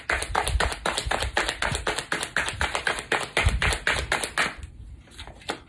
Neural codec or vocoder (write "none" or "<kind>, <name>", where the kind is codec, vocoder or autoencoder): none